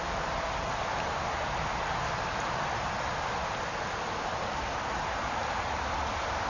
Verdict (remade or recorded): recorded